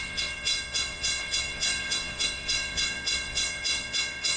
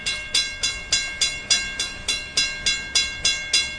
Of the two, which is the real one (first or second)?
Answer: second